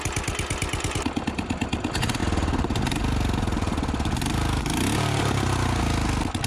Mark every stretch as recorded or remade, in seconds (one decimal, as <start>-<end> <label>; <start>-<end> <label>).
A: 0.0-6.5 recorded